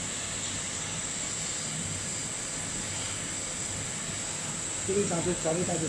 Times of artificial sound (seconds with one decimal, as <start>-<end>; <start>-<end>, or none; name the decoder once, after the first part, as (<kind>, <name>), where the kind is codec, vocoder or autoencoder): none